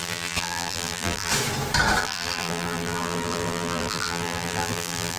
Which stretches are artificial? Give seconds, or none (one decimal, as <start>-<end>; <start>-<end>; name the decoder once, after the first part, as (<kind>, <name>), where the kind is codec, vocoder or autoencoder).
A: 0.0-1.3 (vocoder, BigVGAN v2); 2.0-5.2